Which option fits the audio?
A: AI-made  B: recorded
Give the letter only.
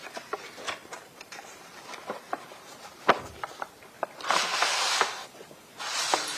B